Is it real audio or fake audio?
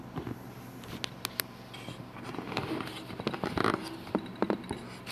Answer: real